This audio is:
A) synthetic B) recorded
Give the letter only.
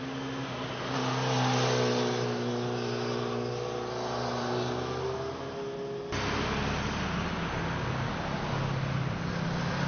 B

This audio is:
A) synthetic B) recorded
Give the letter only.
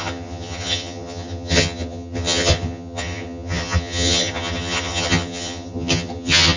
A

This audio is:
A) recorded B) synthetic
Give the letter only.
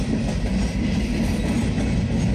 A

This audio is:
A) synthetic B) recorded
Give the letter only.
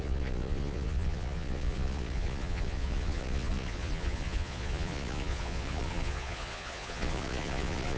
A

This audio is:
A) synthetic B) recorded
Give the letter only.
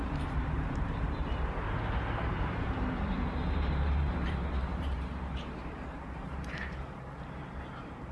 A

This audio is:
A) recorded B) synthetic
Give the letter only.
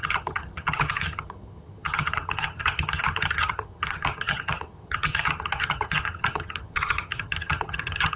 B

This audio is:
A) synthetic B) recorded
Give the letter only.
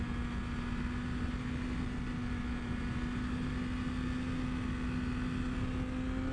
B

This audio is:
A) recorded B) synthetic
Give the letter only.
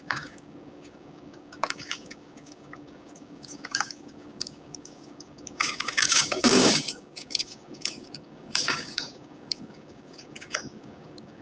B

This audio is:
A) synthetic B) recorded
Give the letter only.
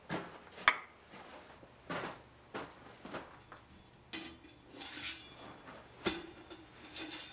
B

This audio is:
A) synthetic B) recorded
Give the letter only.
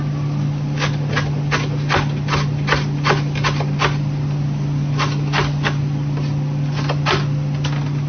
B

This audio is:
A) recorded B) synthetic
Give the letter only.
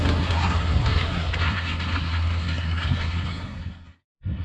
B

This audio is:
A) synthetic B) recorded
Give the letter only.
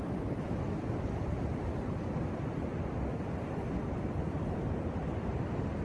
A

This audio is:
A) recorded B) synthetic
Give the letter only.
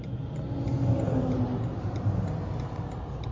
A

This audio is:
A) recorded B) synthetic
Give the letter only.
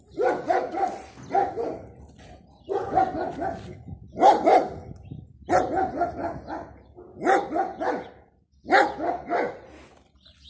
A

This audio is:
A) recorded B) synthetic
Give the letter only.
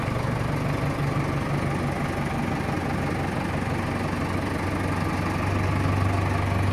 A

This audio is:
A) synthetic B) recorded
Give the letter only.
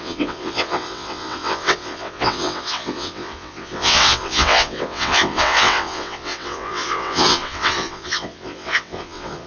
A